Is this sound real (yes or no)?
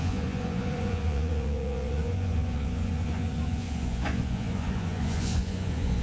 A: no